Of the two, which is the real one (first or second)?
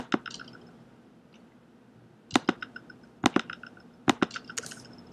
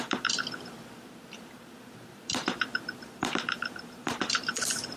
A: first